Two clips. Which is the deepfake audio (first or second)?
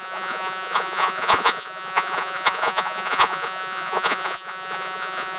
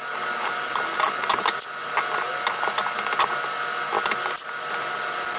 first